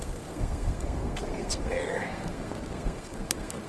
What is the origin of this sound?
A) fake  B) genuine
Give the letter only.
A